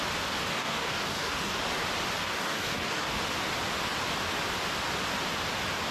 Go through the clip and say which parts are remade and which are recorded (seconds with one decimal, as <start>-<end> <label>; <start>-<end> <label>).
0.0-0.5 recorded; 0.5-1.6 remade; 1.6-2.2 recorded; 2.2-3.2 remade; 3.2-5.9 recorded